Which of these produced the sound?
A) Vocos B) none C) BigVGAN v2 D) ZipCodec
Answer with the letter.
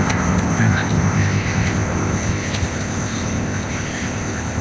D